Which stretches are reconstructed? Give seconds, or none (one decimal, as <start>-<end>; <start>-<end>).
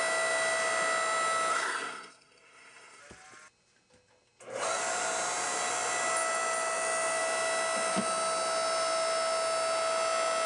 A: 1.5-3.0